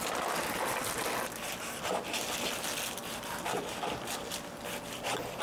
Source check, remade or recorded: recorded